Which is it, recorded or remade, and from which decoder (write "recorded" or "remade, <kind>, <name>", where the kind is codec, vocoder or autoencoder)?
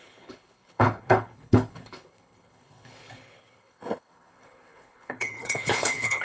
remade, codec, HILCodec